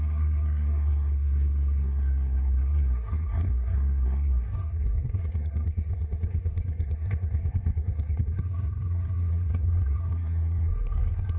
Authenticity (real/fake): fake